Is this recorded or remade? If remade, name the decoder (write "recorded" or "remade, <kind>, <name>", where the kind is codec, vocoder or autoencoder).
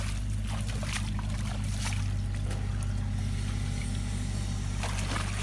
recorded